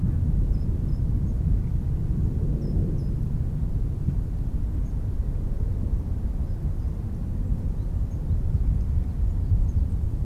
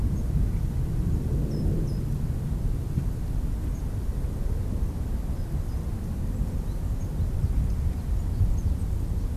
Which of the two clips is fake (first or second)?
first